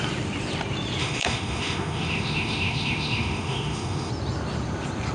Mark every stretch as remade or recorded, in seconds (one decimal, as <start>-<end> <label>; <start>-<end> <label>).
0.0-1.0 recorded; 1.0-4.1 remade; 4.1-5.1 recorded